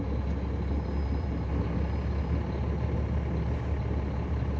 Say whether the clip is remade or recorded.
recorded